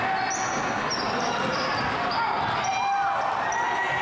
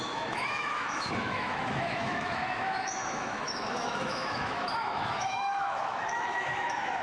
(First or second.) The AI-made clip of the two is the second